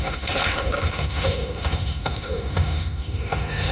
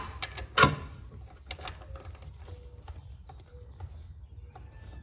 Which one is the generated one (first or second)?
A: first